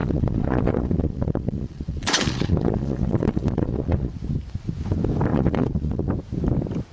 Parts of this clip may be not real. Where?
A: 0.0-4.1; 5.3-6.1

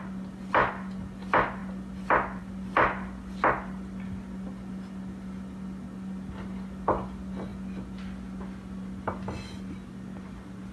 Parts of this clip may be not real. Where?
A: none

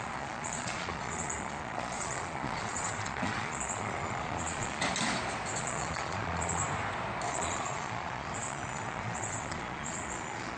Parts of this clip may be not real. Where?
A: 0.0-4.8; 5.6-6.6; 7.3-10.6

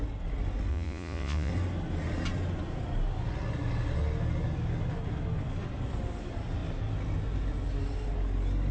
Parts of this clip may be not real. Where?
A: 0.7-1.5

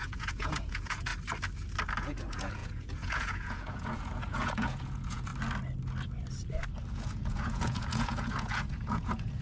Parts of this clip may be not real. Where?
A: 0.0-1.1; 2.0-5.3; 6.9-9.4

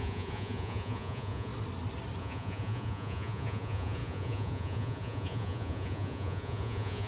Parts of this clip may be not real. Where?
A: 0.0-1.5; 2.2-7.1